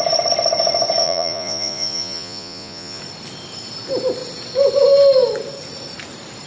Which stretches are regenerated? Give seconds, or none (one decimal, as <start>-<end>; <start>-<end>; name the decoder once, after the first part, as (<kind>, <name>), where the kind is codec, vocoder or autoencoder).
1.0-3.0 (vocoder, Vocos)